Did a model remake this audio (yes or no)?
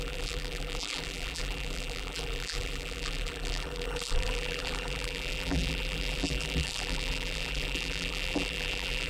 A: yes